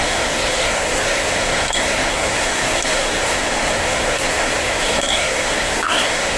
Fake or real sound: fake